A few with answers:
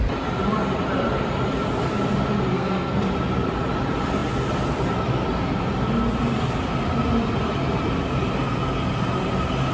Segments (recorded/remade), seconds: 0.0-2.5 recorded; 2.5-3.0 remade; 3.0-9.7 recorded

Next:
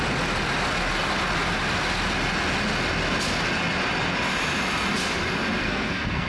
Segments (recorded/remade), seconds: 0.0-5.6 recorded; 5.6-6.3 remade

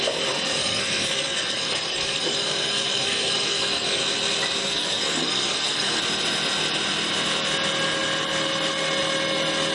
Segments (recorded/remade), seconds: 0.0-0.6 recorded; 0.6-4.0 remade; 4.0-4.6 recorded; 4.6-6.0 remade; 6.0-9.7 recorded